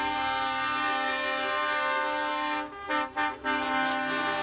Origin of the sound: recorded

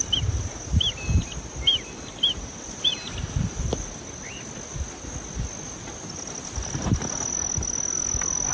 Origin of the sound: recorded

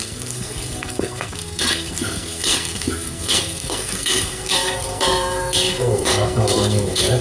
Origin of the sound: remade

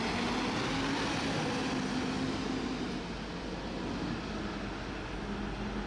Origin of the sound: recorded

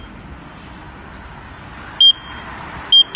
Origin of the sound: recorded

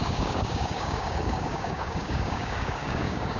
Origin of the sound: remade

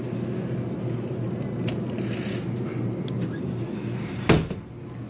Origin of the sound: recorded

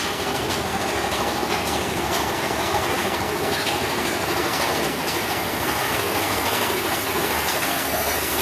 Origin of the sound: remade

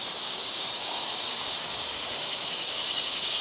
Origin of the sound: remade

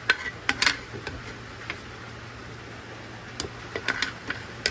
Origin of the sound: recorded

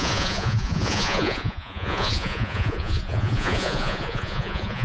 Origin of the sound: remade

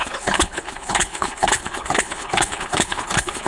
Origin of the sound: remade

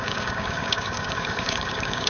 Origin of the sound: remade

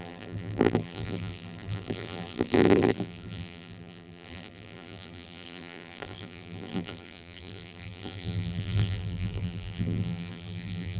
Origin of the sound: remade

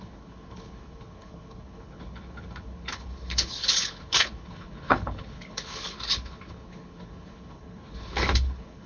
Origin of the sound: remade